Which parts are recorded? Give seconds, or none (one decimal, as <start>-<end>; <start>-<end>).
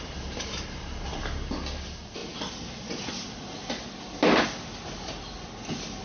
0.0-6.0